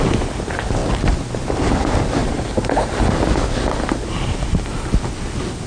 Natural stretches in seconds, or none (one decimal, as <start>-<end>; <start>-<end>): 0.0-2.2; 3.0-5.7